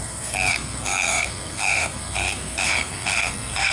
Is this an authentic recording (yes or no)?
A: no